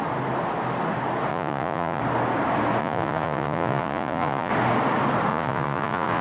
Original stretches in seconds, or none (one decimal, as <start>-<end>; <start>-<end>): 0.0-1.3; 2.0-2.8; 4.5-5.3